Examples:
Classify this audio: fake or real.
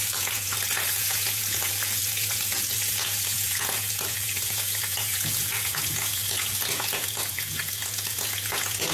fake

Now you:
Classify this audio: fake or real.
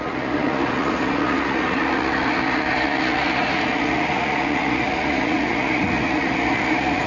fake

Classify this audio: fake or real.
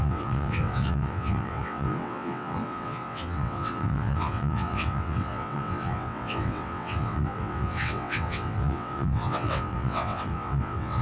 fake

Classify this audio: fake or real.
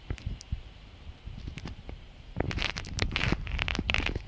fake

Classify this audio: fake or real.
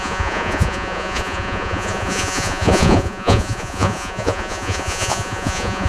fake